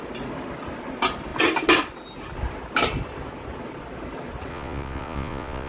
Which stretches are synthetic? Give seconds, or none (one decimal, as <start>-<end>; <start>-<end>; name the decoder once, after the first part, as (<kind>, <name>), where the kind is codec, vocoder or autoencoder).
4.5-5.7 (vocoder, Vocos)